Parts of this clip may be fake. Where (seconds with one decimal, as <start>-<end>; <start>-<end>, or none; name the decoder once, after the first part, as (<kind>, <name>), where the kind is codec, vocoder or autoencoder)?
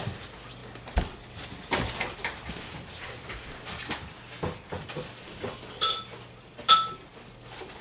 none